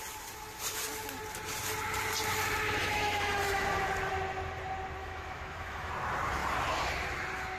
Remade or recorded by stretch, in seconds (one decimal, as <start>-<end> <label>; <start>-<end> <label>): 0.0-2.8 recorded; 2.8-3.6 remade; 3.6-5.0 recorded; 5.0-5.9 remade; 5.9-7.6 recorded